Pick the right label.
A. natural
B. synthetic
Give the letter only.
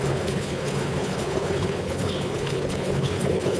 B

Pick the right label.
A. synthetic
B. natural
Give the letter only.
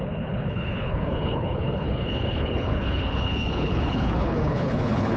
A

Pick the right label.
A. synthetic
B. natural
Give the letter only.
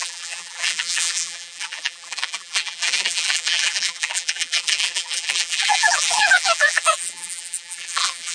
A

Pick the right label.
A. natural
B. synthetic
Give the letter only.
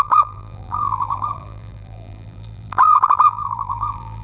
B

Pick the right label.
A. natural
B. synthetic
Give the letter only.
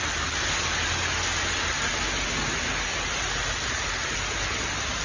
A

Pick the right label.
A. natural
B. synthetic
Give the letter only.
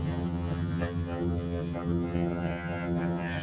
B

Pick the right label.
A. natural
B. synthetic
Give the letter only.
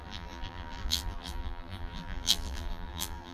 B